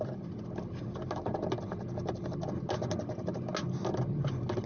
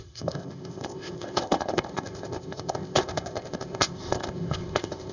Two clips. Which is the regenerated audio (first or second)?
second